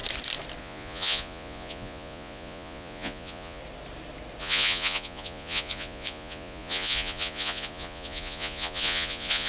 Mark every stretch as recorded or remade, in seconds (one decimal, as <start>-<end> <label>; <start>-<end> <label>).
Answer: 0.0-0.6 recorded; 0.6-3.6 remade; 3.6-4.4 recorded; 4.4-9.5 remade